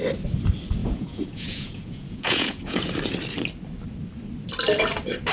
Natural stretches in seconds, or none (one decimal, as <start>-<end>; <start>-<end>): 0.0-0.8; 2.8-5.3

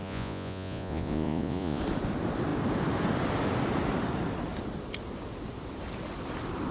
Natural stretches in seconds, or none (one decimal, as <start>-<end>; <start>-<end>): 1.8-6.7

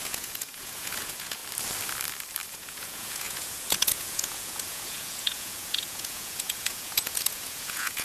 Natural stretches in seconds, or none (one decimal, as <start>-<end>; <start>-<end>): 1.4-2.5

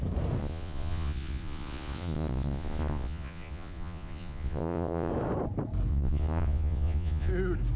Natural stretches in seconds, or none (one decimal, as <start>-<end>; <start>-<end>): 0.0-0.4; 5.1-5.9; 7.3-7.8

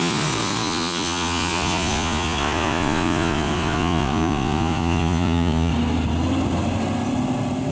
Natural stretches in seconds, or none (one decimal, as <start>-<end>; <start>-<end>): 5.7-7.7

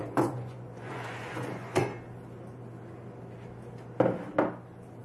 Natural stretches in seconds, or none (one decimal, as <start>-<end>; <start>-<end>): 1.9-5.0